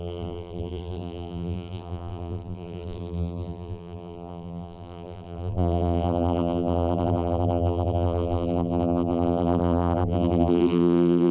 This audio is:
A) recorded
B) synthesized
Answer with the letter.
B